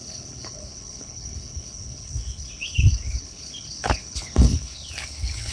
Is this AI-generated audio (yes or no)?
yes